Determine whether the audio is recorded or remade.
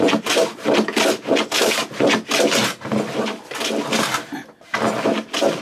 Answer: recorded